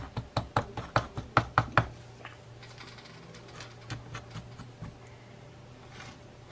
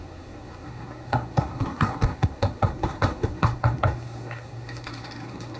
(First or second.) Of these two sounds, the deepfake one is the second